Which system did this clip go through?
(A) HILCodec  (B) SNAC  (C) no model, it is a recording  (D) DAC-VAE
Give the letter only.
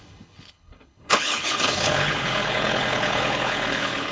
A